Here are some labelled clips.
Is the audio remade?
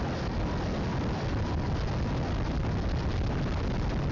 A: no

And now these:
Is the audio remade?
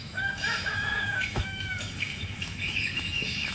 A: yes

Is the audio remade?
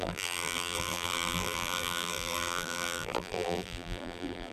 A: yes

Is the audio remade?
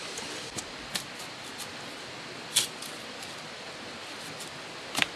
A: no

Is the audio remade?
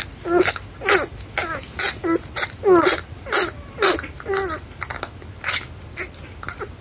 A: no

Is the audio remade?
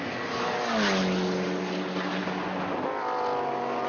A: no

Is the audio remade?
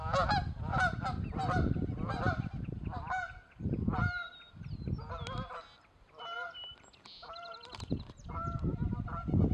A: no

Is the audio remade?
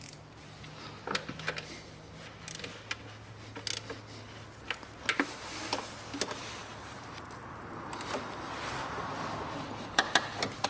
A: no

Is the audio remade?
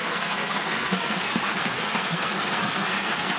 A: yes